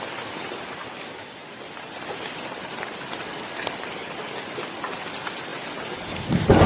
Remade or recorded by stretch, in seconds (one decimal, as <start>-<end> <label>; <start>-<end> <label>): 0.0-1.4 recorded; 1.4-5.0 remade; 5.0-6.7 recorded